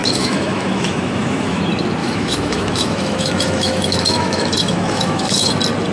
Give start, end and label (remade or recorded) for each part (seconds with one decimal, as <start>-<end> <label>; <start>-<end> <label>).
0.0-1.6 remade; 1.6-2.0 recorded; 2.0-5.5 remade; 5.5-5.9 recorded